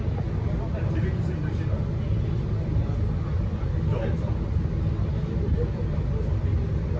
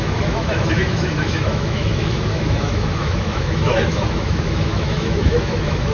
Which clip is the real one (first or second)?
first